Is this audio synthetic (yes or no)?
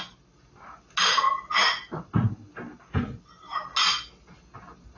no